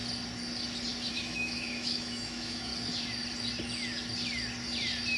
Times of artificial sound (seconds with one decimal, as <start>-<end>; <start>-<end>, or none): 1.1-2.7